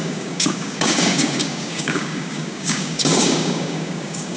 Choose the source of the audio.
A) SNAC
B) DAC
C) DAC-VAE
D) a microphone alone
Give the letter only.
B